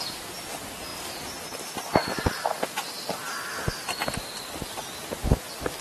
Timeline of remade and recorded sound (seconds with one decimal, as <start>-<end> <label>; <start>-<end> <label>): 0.0-5.8 recorded